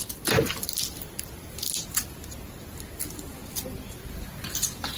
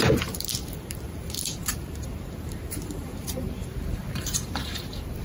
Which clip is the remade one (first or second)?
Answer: second